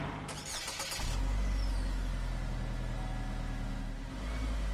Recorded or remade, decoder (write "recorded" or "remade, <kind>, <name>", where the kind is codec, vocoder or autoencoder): recorded